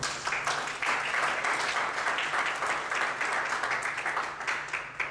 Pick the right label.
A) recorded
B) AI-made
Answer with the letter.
A